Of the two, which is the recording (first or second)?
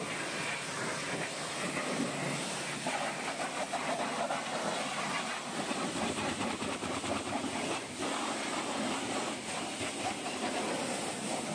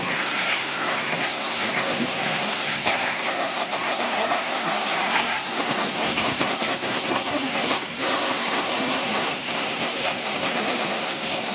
first